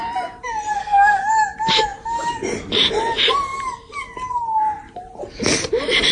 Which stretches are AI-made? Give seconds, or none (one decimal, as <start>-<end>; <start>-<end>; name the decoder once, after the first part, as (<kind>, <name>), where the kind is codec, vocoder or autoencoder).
0.7-1.3 (codec, SNAC)